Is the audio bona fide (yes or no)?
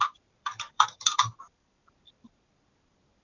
no